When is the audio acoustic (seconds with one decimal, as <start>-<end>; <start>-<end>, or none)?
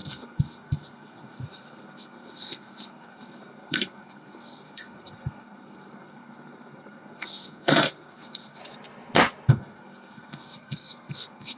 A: 8.6-9.5